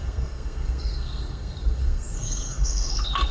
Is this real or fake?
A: fake